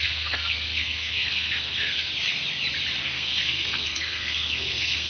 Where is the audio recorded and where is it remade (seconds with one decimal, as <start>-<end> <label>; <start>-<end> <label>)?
0.0-2.1 remade; 2.1-3.0 recorded; 3.0-5.1 remade